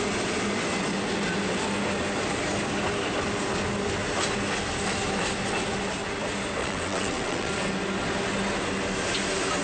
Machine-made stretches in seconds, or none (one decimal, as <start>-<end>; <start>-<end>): 6.6-7.5